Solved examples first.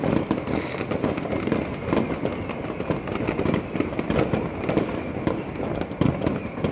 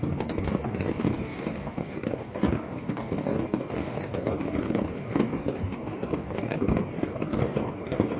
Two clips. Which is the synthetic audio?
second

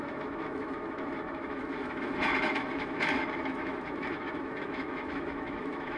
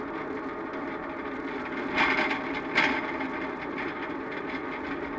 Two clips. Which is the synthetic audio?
first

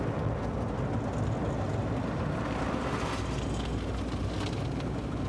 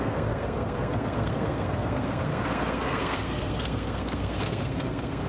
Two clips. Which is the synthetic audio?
second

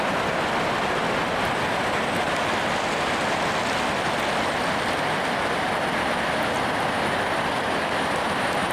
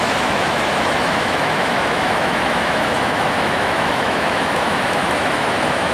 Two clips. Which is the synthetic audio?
second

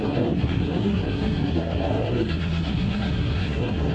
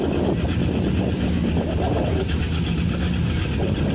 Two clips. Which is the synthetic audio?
first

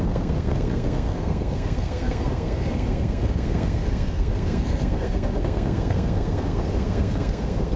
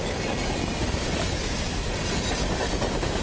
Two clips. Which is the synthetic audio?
first